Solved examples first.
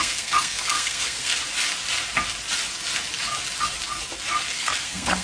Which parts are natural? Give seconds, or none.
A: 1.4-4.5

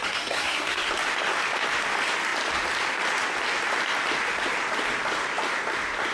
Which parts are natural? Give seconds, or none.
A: 0.9-6.1